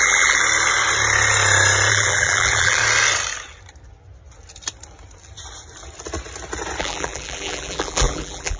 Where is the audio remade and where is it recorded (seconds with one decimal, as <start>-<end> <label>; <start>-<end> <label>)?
0.0-0.4 remade; 0.4-1.9 recorded; 1.9-2.8 remade; 2.8-6.8 recorded; 6.8-8.6 remade